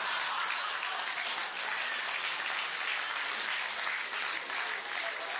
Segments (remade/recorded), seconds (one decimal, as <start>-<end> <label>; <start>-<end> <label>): 0.0-5.4 recorded